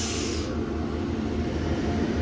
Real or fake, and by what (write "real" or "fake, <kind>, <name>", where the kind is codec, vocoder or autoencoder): real